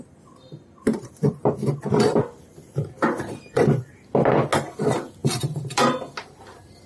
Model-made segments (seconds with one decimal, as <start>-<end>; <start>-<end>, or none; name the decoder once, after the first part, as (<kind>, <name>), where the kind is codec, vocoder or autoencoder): 1.0-4.1 (vocoder, BigVGAN v2); 5.2-6.0